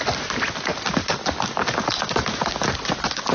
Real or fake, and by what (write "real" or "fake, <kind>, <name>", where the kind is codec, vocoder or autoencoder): real